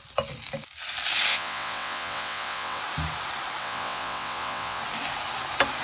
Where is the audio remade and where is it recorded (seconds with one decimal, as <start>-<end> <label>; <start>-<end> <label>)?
0.0-1.3 recorded; 1.3-2.8 remade; 2.8-3.6 recorded; 3.6-4.8 remade; 4.8-5.8 recorded